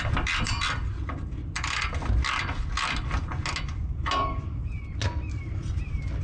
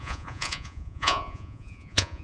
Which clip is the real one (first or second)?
first